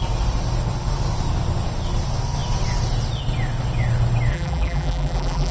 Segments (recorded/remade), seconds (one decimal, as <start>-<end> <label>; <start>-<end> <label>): 0.0-4.3 recorded; 4.3-5.5 remade